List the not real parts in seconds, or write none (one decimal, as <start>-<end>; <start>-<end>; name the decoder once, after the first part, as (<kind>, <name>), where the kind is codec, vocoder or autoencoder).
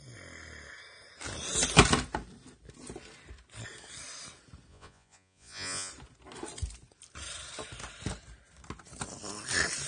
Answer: 4.7-5.9 (vocoder, Vocos)